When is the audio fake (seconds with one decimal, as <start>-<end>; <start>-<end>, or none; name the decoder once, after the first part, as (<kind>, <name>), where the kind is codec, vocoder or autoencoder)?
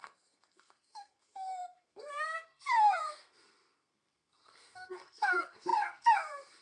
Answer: 0.0-6.6 (codec, SNAC)